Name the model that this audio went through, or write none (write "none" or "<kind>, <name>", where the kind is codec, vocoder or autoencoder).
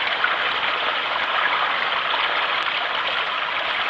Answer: none